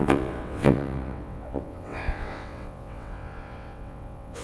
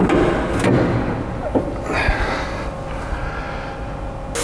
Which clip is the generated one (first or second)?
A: first